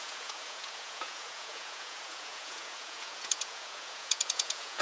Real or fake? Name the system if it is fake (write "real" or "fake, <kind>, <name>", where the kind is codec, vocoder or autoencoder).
fake, vocoder, Vocos